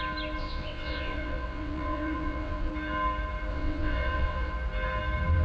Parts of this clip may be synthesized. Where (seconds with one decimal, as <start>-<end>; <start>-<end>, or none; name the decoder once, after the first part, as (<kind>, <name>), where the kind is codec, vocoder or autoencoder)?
0.4-2.7 (vocoder, WaveNeXt); 3.5-4.5